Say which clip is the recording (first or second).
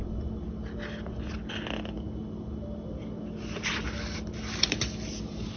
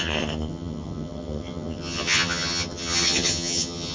first